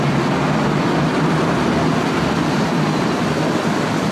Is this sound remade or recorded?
recorded